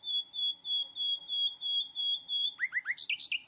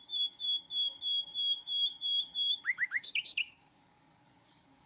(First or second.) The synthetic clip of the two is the second